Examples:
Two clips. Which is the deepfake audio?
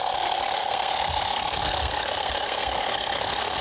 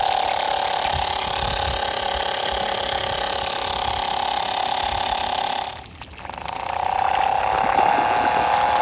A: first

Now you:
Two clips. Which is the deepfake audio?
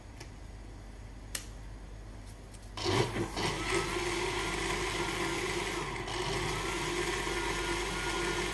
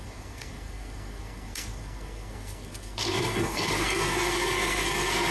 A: second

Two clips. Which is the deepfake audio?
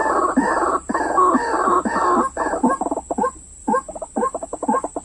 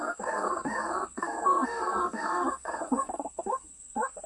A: second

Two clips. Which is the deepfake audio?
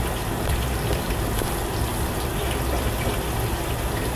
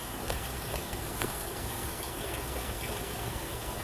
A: second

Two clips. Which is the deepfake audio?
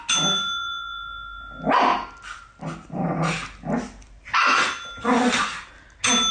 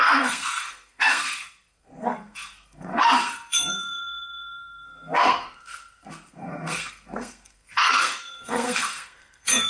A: second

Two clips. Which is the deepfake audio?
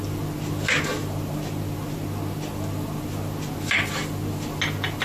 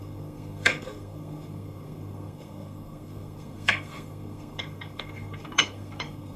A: second